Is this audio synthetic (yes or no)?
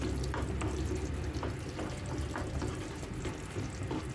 no